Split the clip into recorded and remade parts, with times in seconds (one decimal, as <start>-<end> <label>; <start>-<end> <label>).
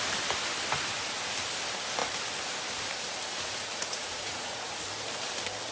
0.0-3.3 recorded; 3.3-4.7 remade; 4.7-5.7 recorded